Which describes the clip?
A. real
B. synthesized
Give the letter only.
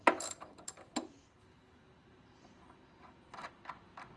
A